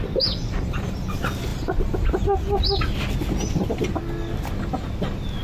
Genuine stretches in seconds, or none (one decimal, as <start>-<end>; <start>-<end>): 0.0-5.4